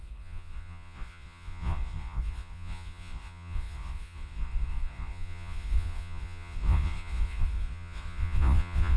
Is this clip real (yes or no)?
no